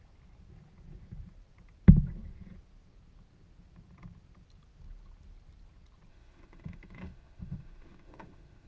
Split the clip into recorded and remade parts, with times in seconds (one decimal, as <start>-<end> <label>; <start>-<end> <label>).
0.0-6.1 recorded; 6.1-8.7 remade

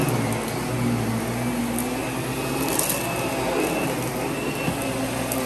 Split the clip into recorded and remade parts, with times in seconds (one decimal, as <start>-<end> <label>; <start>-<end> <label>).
0.0-5.5 recorded

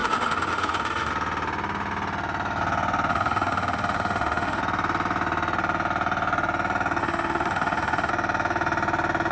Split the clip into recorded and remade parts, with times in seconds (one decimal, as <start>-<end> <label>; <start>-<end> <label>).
0.0-1.1 remade; 1.1-3.1 recorded; 3.1-4.6 remade; 4.6-7.0 recorded; 7.0-8.1 remade; 8.1-9.3 recorded

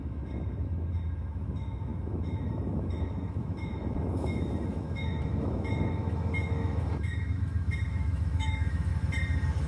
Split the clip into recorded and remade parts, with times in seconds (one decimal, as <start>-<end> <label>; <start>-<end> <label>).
0.0-8.9 remade; 8.9-9.7 recorded

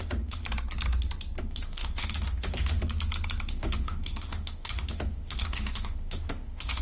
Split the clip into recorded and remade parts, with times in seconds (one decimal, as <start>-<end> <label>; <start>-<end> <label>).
0.0-0.4 remade; 0.4-1.4 recorded; 1.4-2.8 remade; 2.8-3.5 recorded; 3.5-6.8 remade